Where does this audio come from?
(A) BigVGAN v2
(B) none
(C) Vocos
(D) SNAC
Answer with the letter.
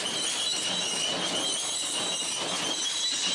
B